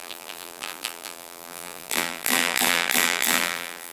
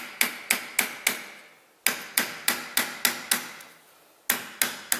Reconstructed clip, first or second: first